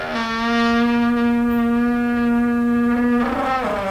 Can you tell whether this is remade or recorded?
recorded